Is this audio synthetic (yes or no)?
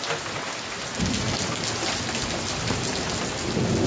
no